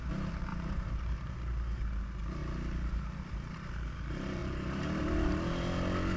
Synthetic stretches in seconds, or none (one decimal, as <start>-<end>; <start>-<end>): 0.5-1.3